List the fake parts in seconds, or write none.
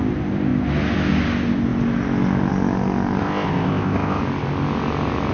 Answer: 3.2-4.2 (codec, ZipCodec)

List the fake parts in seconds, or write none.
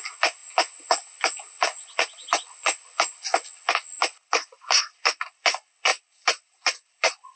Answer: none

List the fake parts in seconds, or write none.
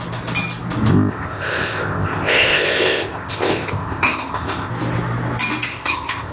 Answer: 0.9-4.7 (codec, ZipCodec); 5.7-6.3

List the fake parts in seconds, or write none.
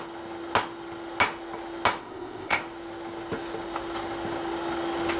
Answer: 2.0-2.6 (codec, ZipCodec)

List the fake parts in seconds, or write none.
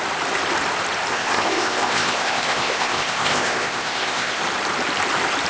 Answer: 1.1-4.4 (codec, ZipCodec)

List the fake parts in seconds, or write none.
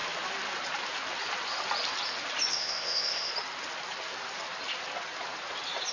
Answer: 2.5-3.3 (codec, ZipCodec)